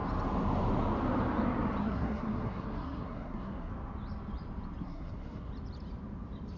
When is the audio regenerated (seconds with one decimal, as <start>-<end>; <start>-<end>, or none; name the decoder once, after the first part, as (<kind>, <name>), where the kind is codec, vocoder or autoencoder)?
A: 1.8-3.7 (codec, SNAC); 4.8-5.5